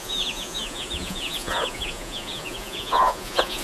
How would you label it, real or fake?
fake